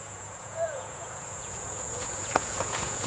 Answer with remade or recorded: remade